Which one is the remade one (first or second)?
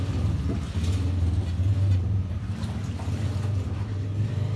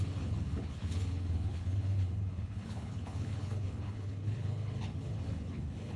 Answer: second